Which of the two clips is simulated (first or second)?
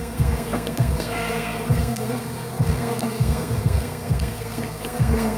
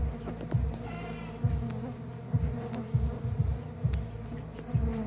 first